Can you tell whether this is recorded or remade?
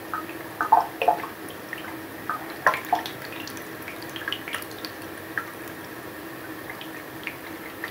remade